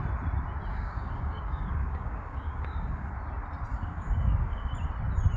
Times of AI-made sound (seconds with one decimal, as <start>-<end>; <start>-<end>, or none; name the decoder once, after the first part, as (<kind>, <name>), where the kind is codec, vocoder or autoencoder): 0.7-3.1 (codec, DAC); 3.7-4.7